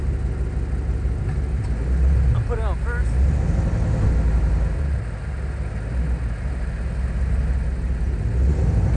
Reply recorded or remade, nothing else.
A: recorded